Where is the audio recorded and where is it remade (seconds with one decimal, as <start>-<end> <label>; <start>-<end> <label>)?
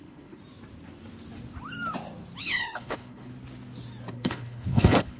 0.0-0.4 remade; 0.4-2.4 recorded; 2.4-3.3 remade; 3.3-4.1 recorded; 4.1-5.2 remade